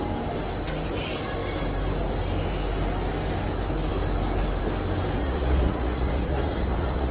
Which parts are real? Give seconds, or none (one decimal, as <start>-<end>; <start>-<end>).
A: 0.0-5.2